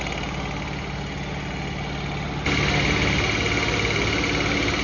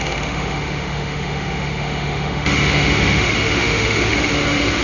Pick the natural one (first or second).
first